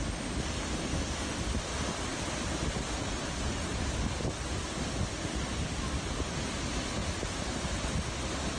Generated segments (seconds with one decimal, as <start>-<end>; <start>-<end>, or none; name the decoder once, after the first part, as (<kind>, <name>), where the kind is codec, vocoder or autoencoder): none